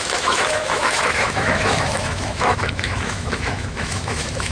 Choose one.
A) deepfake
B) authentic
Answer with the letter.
A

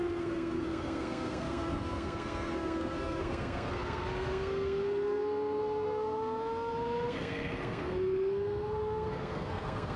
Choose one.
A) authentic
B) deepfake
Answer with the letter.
B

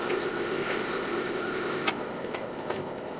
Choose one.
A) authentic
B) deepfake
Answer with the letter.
B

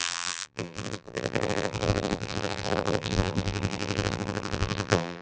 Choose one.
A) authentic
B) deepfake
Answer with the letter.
B